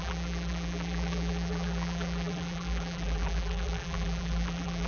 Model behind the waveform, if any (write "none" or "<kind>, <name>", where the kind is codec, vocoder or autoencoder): vocoder, BigVGAN v2